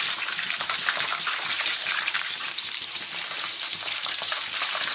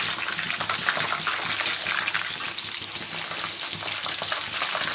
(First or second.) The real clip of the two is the second